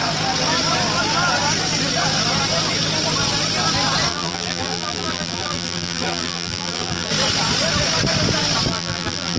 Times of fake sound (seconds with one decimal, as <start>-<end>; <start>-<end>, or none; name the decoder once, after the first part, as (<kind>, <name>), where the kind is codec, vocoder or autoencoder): 4.1-7.1 (vocoder, BigVGAN v2); 8.7-9.4